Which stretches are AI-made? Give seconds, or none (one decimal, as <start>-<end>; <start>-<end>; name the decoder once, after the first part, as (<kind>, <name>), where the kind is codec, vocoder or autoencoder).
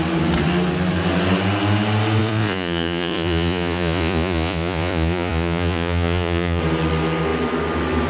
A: 2.2-6.6 (vocoder, Vocos)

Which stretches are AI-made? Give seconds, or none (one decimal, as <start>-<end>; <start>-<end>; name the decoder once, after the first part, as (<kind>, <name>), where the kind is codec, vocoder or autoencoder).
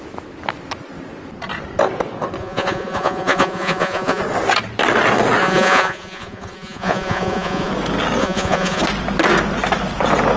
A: 2.4-4.2 (vocoder, Vocos); 5.4-7.7; 8.2-8.8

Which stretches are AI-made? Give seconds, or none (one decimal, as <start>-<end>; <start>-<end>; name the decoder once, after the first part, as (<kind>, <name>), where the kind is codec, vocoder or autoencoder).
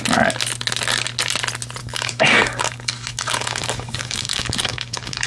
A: 1.8-5.3 (codec, DAC)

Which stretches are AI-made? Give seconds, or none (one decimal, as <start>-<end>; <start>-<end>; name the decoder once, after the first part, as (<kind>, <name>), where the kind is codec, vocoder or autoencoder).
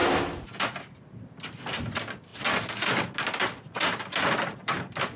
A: none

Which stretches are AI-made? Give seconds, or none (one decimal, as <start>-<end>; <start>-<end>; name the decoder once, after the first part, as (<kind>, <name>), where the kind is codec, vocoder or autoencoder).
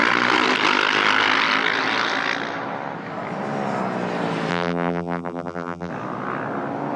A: 4.5-5.9 (vocoder, BigVGAN v2)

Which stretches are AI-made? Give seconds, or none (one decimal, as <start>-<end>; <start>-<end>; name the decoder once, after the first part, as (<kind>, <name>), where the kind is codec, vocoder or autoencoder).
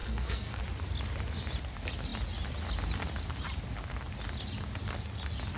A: 0.0-0.6 (codec, SNAC)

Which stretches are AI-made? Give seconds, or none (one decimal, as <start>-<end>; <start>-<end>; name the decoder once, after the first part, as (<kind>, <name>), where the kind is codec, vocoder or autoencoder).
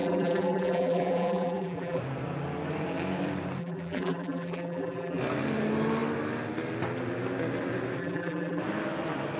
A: 0.0-2.0 (vocoder, BigVGAN v2); 3.6-5.2; 8.0-8.6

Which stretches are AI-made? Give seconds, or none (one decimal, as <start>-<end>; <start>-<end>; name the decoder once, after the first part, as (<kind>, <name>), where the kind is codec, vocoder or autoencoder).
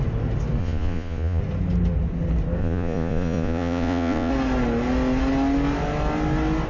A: 0.6-1.4 (vocoder, Vocos); 2.6-4.3